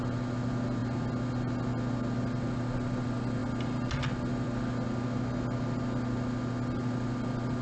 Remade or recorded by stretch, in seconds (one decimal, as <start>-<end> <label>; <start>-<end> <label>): 0.0-7.6 recorded